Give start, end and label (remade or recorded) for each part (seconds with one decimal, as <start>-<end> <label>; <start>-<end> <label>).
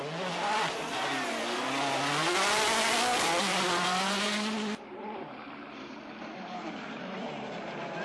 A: 0.0-3.4 recorded; 3.4-8.0 remade